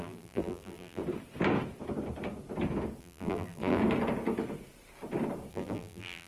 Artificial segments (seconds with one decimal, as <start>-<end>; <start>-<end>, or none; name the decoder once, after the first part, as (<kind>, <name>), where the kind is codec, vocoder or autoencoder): 0.0-1.0 (vocoder, BigVGAN v2); 3.0-3.8; 5.5-6.3